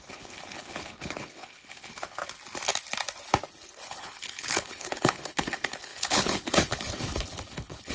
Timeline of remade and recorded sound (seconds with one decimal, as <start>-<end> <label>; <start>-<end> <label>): 0.0-2.2 remade; 2.2-3.9 recorded; 3.9-7.9 remade